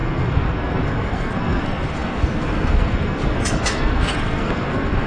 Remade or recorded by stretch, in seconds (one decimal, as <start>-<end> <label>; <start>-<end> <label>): 0.0-5.1 remade